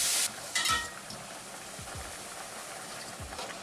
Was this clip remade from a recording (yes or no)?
yes